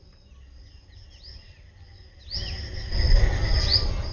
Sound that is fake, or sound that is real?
real